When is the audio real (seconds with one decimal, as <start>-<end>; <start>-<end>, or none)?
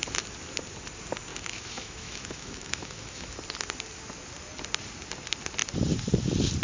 0.0-1.3; 3.4-6.6